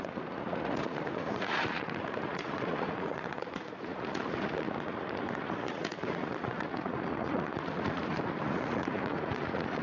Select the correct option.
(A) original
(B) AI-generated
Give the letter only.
B